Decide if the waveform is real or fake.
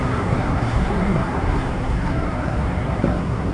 fake